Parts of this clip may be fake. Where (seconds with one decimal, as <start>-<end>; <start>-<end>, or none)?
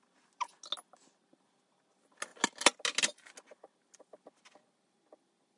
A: none